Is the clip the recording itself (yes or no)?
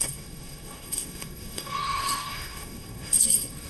no